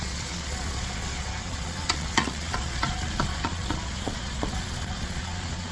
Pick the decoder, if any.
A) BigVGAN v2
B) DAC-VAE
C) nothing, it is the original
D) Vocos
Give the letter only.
D